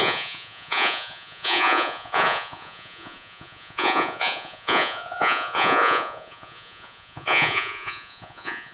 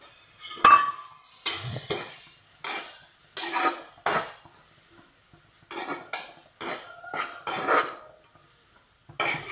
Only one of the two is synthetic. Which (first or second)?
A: first